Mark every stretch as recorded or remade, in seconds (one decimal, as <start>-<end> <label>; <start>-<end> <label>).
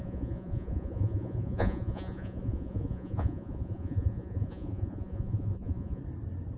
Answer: 0.0-6.0 remade; 6.0-6.6 recorded